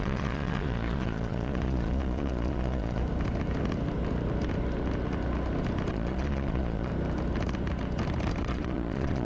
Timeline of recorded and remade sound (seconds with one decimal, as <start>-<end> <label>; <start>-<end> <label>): 0.0-3.0 remade; 3.0-5.9 recorded; 5.9-6.9 remade; 6.9-8.4 recorded; 8.4-9.2 remade